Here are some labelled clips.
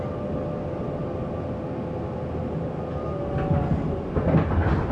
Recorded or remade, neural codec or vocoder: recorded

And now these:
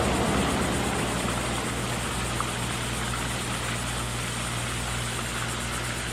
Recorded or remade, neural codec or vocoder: recorded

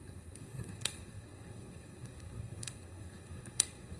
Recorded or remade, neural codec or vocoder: remade, codec, SNAC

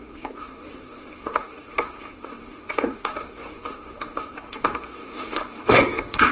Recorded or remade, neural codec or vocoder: remade, codec, SNAC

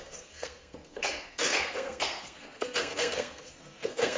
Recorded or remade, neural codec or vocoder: remade, codec, SNAC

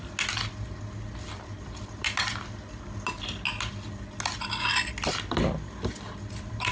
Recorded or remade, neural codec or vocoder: recorded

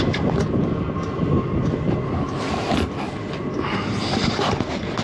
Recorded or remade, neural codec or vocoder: recorded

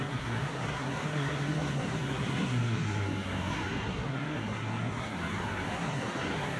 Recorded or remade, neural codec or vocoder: remade, codec, SNAC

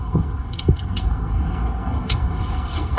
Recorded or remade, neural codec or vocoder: remade, codec, SNAC